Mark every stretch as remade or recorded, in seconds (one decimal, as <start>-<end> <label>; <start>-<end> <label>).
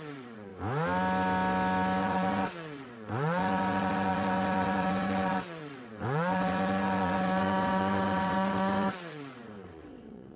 0.0-0.5 remade; 0.5-2.0 recorded; 2.0-10.4 remade